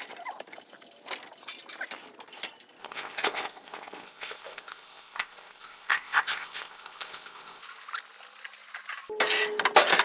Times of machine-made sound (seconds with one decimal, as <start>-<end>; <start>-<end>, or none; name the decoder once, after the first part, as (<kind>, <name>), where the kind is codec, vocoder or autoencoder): 2.8-7.6 (codec, ZipCodec)